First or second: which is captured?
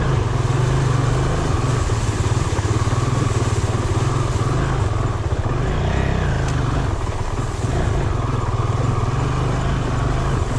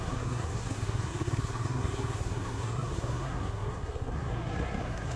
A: first